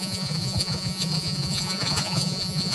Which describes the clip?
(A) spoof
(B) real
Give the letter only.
A